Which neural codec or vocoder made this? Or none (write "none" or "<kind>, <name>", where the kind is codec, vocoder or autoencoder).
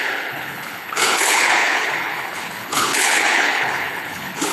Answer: codec, HILCodec